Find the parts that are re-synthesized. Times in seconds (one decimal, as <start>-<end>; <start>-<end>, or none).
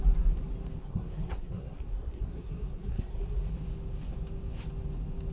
0.8-3.5